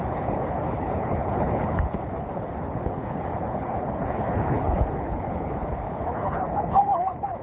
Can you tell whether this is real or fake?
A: fake